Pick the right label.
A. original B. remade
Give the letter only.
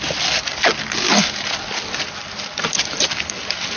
A